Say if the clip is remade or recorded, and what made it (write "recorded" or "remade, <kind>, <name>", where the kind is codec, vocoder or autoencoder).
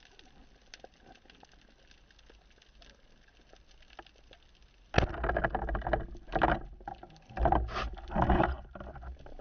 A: recorded